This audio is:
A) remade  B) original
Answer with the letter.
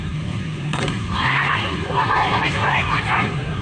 A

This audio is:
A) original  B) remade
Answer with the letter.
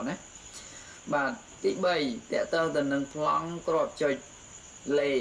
A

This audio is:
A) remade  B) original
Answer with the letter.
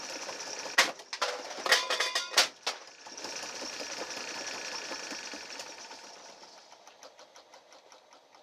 B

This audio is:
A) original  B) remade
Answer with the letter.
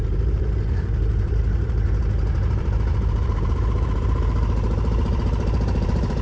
B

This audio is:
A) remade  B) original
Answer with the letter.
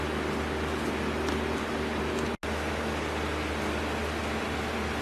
B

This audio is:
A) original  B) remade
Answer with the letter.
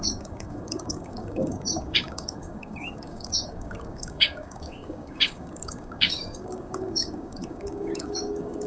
B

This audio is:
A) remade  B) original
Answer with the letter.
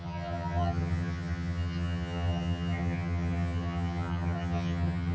A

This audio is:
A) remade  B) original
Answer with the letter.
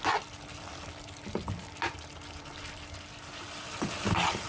B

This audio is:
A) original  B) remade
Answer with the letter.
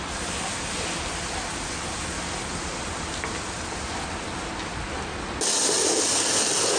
A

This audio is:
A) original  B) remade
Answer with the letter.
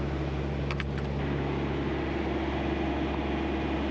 A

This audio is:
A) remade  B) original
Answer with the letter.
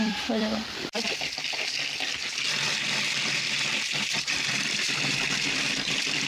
A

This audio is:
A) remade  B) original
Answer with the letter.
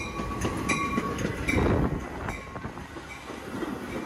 B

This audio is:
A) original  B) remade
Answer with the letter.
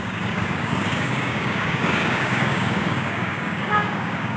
B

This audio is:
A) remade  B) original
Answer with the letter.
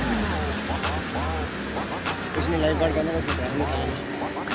B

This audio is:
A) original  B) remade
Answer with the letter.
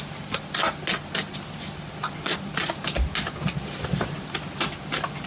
A